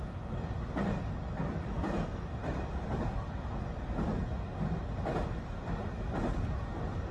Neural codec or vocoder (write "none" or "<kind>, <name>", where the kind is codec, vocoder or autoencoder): none